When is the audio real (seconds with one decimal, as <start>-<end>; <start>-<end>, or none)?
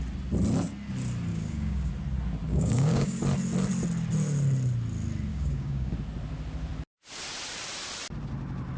0.0-1.3; 1.9-2.5; 3.2-5.3; 5.9-8.8